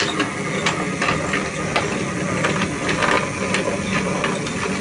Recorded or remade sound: recorded